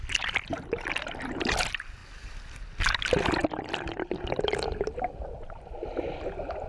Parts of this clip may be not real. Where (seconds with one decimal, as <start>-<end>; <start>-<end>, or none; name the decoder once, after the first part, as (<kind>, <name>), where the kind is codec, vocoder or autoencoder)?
none